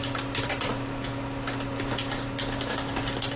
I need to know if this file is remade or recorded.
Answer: recorded